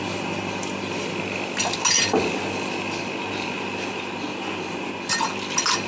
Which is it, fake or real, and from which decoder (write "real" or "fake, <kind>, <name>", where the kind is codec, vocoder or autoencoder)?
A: real